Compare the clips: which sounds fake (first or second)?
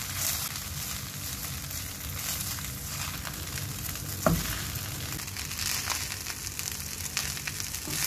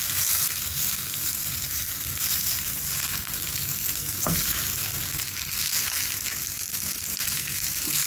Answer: second